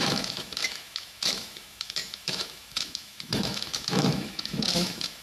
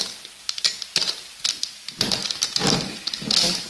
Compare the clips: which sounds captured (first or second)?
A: second